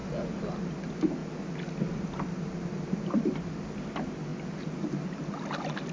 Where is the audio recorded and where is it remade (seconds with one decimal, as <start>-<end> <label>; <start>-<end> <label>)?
0.0-5.9 recorded